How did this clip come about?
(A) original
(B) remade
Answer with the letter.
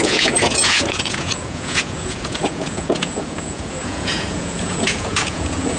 B